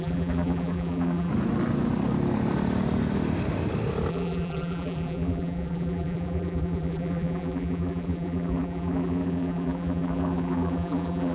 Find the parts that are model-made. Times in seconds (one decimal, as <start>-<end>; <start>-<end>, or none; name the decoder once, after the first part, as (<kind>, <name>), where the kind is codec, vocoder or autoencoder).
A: 0.0-1.3 (vocoder, BigVGAN v2); 4.1-11.3